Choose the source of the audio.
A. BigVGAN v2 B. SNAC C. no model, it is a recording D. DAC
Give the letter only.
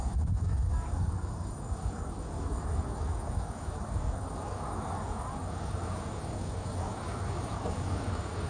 D